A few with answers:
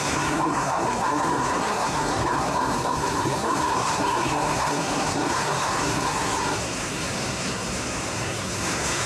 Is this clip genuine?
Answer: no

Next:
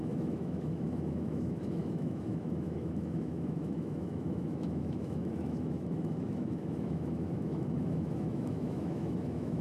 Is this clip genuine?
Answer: no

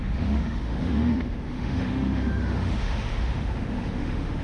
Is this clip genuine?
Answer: no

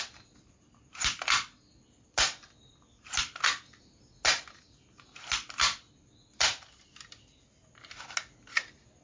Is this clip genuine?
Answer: yes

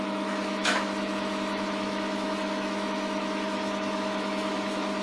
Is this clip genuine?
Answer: no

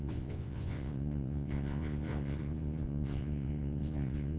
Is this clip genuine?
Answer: no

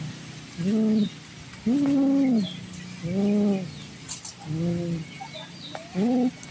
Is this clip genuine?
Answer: yes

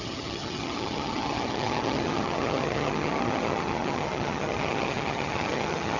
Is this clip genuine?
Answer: no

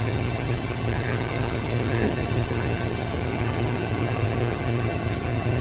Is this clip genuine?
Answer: no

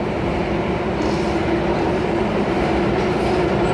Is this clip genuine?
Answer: yes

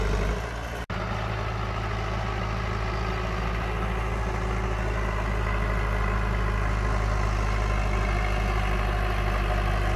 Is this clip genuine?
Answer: yes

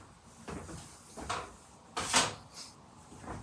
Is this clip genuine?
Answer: yes